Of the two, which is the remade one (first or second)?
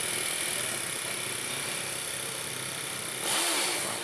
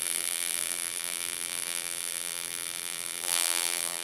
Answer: second